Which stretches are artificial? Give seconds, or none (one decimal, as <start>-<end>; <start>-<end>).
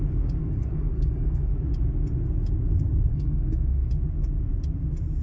0.4-1.5; 3.1-3.9